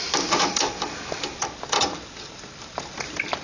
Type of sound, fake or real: real